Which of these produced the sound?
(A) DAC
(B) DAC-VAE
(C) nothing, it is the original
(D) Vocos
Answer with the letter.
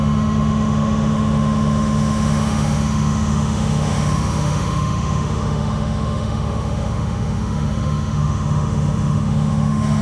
B